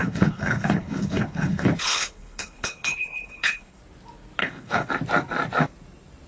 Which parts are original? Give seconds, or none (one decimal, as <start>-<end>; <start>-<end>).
3.8-4.4; 4.9-6.3